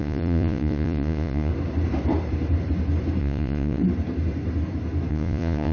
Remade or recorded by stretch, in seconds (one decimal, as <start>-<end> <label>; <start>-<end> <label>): 0.0-1.5 remade; 1.5-3.2 recorded; 3.2-3.8 remade; 3.8-5.1 recorded; 5.1-5.7 remade